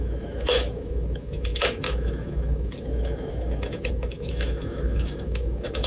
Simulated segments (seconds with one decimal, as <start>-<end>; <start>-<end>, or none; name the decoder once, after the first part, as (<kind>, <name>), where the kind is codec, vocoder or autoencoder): 0.0-5.9 (autoencoder, DAC-VAE)

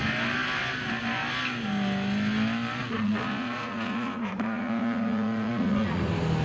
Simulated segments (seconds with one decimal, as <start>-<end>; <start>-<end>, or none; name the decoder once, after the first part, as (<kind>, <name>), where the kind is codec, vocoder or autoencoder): 2.8-6.0 (vocoder, Vocos)

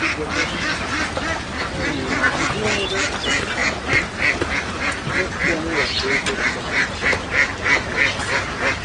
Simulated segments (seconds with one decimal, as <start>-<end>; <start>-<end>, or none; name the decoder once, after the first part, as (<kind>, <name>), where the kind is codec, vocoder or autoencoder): none

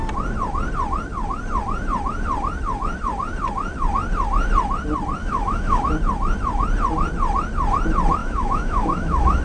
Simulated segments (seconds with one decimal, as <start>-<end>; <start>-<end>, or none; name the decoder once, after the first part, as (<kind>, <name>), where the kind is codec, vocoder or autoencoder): 5.2-5.8 (autoencoder, DAC-VAE); 8.2-9.4

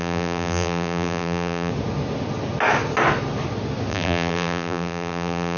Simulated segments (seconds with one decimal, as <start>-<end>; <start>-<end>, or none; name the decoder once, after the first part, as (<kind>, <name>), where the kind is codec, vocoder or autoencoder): 0.0-1.7 (vocoder, BigVGAN v2); 3.9-5.6